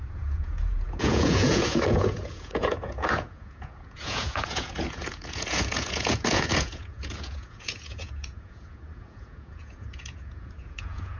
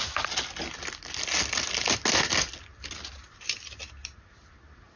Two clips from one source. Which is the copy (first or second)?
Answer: first